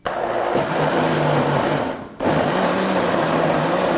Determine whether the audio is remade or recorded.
recorded